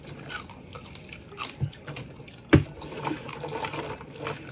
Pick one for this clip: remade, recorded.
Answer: recorded